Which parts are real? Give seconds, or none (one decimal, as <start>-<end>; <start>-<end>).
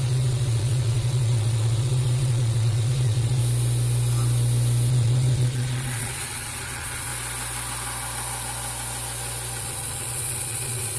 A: 3.4-4.9; 7.1-9.6